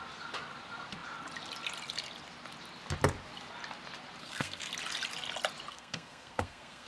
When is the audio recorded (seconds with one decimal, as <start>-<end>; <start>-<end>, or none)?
0.0-4.2; 4.7-5.7

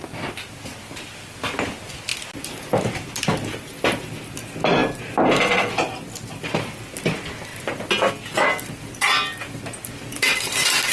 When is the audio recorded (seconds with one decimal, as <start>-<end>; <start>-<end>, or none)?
0.0-10.9

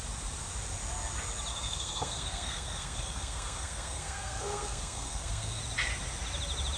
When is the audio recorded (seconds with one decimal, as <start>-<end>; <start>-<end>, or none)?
0.0-1.5; 5.6-6.8

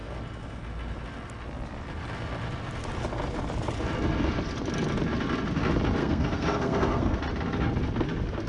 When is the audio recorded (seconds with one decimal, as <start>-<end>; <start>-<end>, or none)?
0.0-6.0; 7.2-8.5

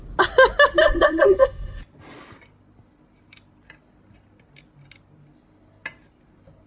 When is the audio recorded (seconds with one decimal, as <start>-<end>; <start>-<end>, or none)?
0.0-0.8; 1.8-6.7